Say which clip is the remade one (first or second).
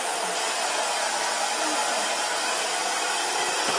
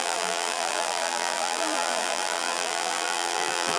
second